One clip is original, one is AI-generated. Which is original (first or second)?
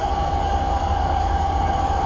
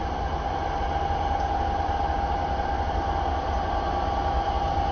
second